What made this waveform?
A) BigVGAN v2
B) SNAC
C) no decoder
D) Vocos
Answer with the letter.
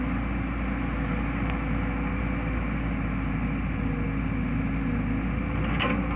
C